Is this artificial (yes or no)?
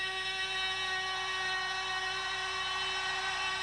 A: no